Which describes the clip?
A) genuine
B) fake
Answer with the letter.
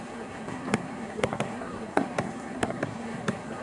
B